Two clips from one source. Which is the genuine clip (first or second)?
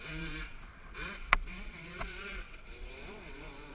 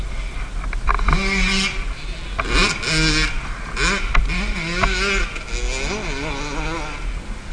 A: second